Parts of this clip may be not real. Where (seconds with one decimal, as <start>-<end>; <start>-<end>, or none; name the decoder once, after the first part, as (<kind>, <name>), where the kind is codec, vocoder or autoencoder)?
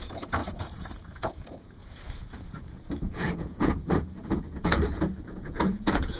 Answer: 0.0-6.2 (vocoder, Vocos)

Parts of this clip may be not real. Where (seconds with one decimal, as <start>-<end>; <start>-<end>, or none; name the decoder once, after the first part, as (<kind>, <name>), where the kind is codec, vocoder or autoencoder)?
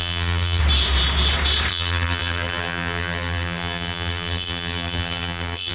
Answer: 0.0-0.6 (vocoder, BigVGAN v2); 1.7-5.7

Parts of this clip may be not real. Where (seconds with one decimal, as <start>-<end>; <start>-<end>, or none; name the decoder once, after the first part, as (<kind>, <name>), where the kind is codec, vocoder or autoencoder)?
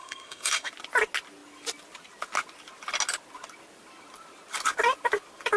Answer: 0.0-0.7 (codec, SNAC)